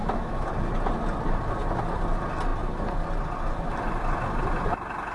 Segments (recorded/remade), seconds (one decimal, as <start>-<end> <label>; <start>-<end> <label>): 0.0-0.5 remade; 0.5-5.1 recorded